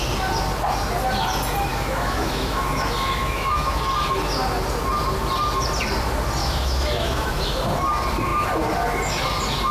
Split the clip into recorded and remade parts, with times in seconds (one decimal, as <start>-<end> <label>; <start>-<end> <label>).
0.0-1.7 recorded; 1.7-3.8 remade; 3.8-6.4 recorded; 6.4-7.3 remade; 7.3-9.7 recorded